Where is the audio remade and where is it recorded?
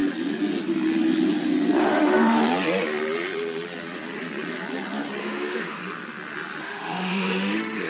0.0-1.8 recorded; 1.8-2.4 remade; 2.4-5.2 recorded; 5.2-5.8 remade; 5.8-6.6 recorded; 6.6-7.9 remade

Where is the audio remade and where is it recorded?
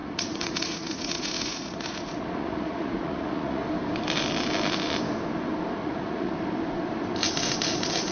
0.0-3.6 remade; 3.6-5.8 recorded; 5.8-6.3 remade; 6.3-8.1 recorded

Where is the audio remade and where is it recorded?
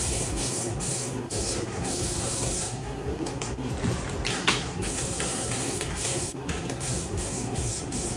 0.0-3.7 remade; 3.7-4.3 recorded; 4.3-8.2 remade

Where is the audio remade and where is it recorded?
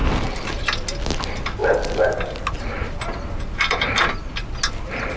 0.0-5.2 recorded